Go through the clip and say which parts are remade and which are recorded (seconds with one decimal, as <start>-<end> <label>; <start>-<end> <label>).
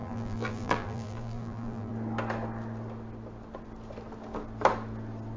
0.0-1.9 remade; 1.9-5.4 recorded